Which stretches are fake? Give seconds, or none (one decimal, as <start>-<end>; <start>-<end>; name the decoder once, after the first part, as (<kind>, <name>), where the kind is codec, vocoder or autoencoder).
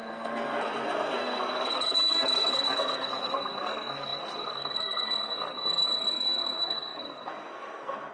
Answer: 0.0-8.1 (codec, SNAC)